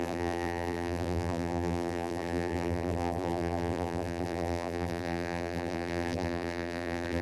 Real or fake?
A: fake